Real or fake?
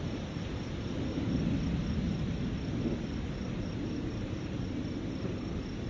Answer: real